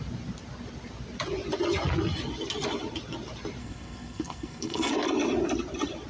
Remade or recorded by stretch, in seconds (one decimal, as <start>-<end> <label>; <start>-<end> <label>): 0.0-3.6 recorded; 3.6-4.9 remade; 4.9-6.1 recorded

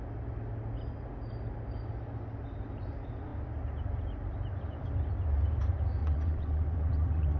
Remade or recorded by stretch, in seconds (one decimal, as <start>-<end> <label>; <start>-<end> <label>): 0.0-6.0 recorded; 6.0-7.4 remade

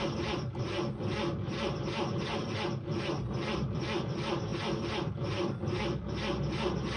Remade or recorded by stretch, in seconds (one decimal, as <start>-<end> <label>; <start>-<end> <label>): 0.0-4.5 remade; 4.5-5.1 recorded; 5.1-7.0 remade